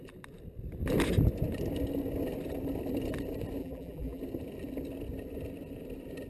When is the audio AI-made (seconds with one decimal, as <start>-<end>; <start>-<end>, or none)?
3.6-4.2

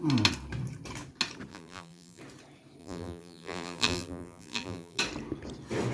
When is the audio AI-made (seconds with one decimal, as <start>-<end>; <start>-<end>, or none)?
1.5-2.2; 2.8-5.0

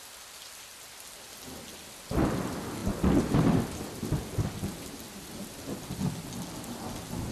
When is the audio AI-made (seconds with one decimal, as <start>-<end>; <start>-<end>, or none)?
none

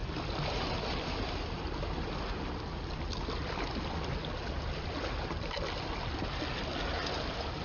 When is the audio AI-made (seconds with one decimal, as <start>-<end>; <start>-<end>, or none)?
none

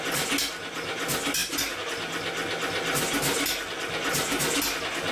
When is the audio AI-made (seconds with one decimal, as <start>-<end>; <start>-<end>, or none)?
none

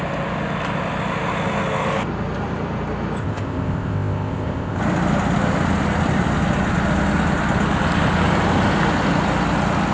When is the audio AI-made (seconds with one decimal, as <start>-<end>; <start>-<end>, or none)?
3.2-4.8